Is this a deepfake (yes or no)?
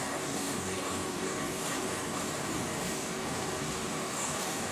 yes